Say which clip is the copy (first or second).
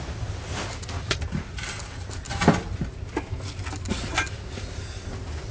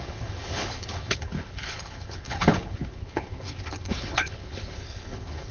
second